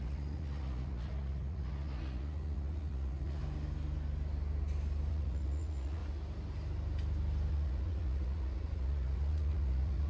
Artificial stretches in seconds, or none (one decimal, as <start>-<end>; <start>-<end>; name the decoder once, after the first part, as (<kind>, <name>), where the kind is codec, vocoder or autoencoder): 0.0-3.4 (vocoder, Vocos); 5.1-6.0; 7.5-10.1